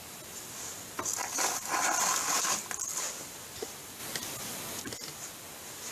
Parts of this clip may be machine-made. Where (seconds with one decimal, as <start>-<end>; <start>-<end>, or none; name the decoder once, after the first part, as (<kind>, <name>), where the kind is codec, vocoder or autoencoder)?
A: none